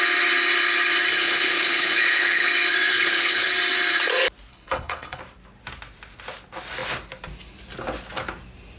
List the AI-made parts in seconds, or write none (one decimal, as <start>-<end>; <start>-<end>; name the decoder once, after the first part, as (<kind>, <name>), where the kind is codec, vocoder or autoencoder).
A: 1.1-2.5 (codec, HILCodec); 2.9-3.5; 4.5-5.2